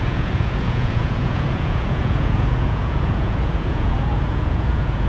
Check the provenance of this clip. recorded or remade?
remade